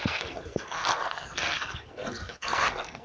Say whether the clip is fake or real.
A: fake